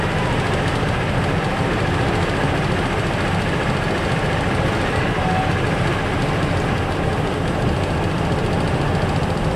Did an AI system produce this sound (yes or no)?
no